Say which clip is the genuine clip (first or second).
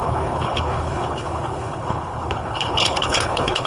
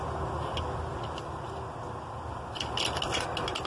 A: second